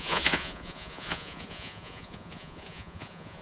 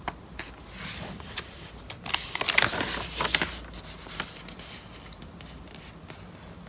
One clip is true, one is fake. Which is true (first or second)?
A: second